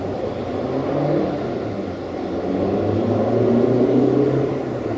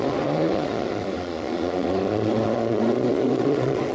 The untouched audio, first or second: first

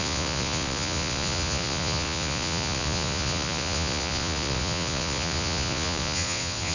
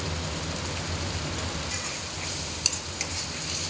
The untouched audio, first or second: second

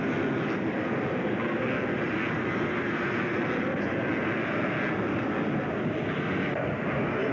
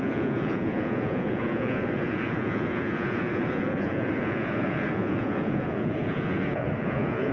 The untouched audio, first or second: first